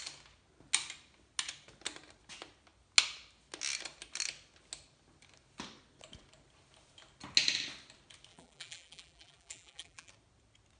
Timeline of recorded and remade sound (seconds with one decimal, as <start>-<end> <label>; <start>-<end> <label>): 0.0-8.3 recorded; 8.3-10.1 remade; 10.1-10.8 recorded